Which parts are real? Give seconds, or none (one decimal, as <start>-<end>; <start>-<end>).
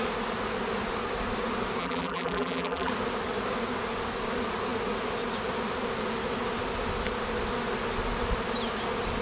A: 0.0-1.8; 2.9-9.2